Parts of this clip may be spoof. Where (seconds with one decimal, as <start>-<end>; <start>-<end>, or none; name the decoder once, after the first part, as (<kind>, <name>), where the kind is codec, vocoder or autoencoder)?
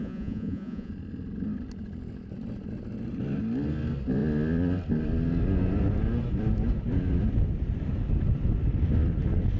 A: 0.0-0.9 (vocoder, Vocos)